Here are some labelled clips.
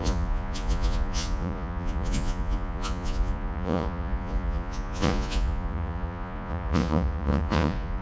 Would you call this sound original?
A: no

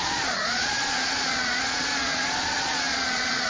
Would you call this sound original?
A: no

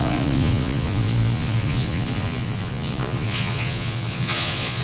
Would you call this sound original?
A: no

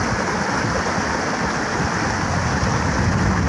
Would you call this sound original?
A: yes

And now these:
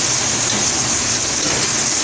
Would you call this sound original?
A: yes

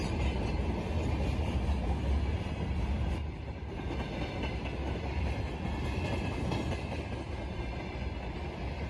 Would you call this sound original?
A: yes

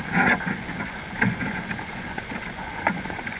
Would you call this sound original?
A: no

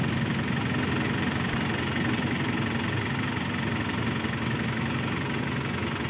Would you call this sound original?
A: yes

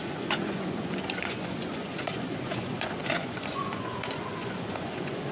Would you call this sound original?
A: no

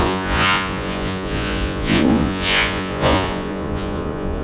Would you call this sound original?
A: no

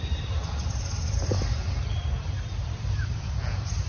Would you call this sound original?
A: yes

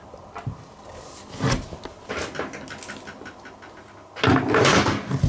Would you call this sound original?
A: yes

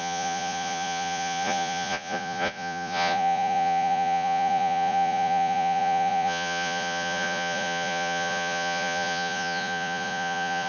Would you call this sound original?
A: no